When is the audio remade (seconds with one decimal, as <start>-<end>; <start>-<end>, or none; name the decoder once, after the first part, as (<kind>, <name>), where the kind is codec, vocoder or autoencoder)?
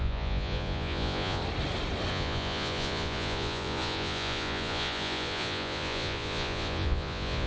0.0-1.4 (vocoder, Vocos); 2.1-7.5